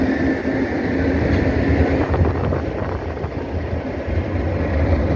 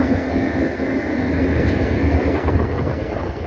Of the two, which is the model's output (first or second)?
second